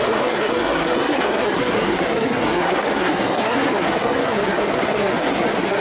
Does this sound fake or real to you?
fake